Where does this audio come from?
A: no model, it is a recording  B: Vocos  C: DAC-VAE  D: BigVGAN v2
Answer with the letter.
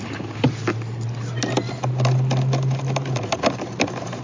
A